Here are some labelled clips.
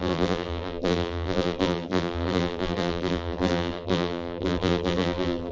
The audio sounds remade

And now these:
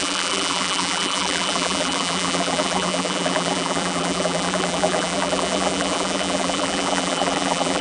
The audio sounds remade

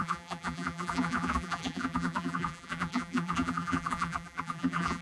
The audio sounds remade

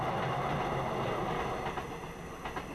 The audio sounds recorded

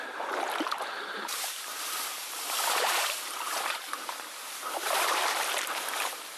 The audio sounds remade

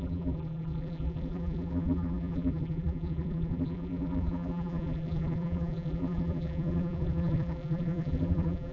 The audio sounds remade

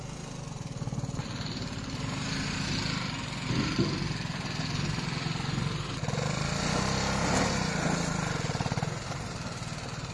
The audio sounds recorded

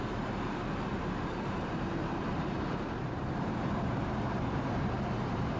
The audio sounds remade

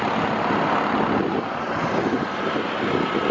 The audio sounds remade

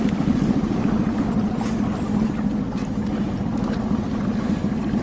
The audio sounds recorded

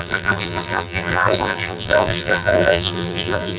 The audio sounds remade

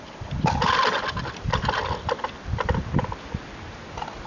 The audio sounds recorded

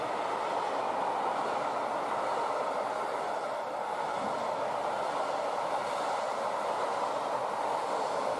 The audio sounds recorded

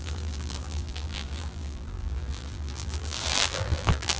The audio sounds remade